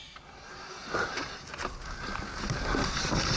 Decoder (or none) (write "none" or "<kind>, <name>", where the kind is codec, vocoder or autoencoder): none